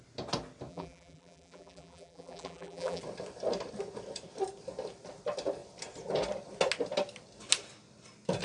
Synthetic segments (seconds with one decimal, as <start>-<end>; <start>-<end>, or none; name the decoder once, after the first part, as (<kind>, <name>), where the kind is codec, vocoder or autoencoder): 0.7-3.0 (vocoder, BigVGAN v2)

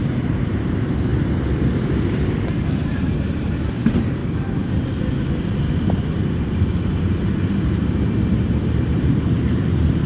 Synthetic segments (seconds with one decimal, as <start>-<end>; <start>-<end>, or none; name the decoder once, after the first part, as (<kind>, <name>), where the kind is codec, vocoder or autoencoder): 0.0-1.1 (vocoder, BigVGAN v2); 3.1-4.2; 8.9-10.1

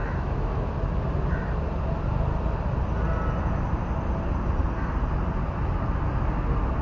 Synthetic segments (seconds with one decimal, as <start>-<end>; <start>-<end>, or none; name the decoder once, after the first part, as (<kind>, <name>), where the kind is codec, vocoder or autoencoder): 0.0-0.7 (autoencoder, DAC-VAE)

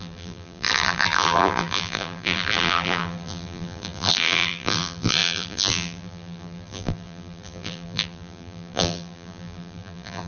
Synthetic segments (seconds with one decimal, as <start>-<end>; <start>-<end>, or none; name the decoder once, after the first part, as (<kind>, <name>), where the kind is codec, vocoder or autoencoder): 0.0-10.3 (vocoder, BigVGAN v2)

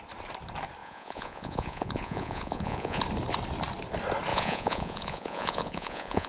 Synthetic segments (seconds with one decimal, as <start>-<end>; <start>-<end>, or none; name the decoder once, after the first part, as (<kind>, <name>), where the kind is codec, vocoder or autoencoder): 0.8-3.0 (vocoder, Vocos); 4.3-6.3

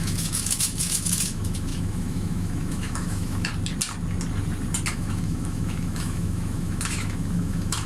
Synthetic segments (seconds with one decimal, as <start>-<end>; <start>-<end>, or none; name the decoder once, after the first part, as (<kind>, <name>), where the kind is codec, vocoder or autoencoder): 0.0-3.5 (autoencoder, DAC-VAE); 4.9-7.9